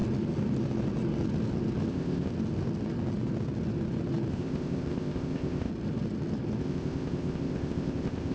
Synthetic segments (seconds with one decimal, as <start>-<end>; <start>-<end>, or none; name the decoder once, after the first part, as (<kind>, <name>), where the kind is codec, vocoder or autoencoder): 1.9-2.3 (codec, ZipCodec); 4.3-5.7; 6.6-8.3